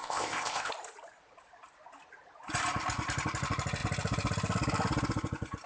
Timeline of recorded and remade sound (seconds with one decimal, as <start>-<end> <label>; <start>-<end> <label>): 0.0-0.7 remade; 0.7-5.7 recorded